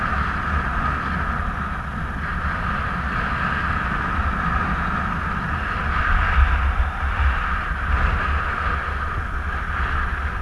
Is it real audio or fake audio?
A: real